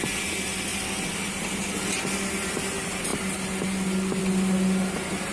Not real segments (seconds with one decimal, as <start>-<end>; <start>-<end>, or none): none